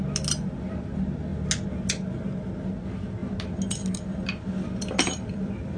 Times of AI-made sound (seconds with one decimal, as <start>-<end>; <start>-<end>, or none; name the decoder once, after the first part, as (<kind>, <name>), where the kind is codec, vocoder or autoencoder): none